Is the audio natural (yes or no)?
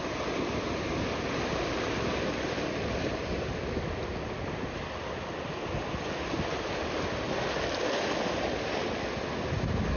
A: yes